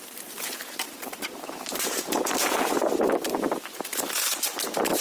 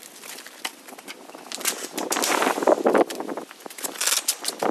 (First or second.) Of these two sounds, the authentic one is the second